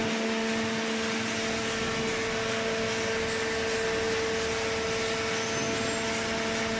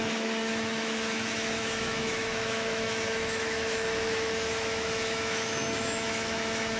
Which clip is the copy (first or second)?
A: second